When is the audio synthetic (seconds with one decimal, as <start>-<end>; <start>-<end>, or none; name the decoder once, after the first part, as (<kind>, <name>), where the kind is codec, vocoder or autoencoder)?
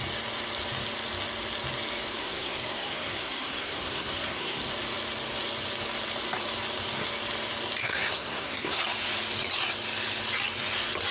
2.2-4.7 (codec, SNAC); 7.8-8.8